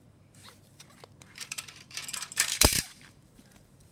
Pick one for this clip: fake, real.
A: fake